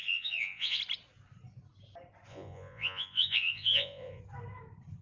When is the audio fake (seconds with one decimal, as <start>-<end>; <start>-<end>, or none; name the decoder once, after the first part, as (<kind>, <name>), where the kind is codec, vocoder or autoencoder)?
0.0-0.8 (vocoder, Vocos); 2.3-4.2